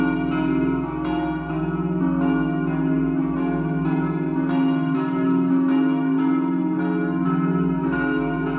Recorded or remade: recorded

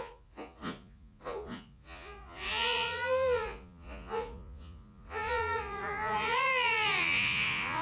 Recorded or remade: remade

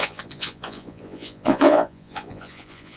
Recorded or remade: remade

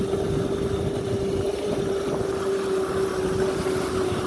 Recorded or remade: recorded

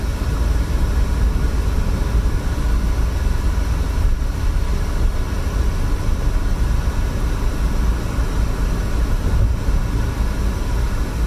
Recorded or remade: recorded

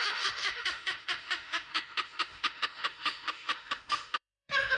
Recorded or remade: remade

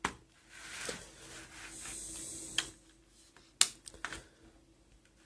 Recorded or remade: recorded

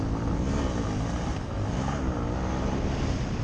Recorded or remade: recorded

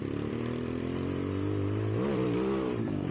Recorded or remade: remade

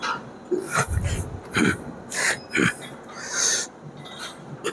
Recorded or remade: recorded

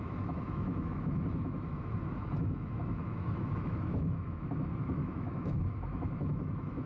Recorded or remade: remade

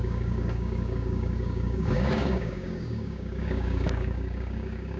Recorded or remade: remade